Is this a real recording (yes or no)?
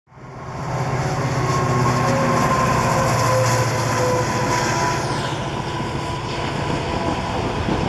yes